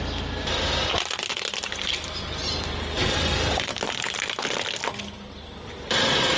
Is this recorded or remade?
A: recorded